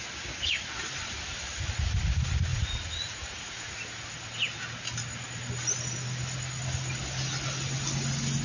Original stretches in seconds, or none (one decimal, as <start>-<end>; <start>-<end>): 0.0-2.5; 3.7-8.4

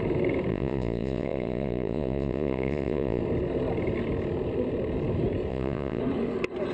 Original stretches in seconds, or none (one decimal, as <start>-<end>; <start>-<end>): 0.0-0.5; 3.2-5.5; 6.0-6.7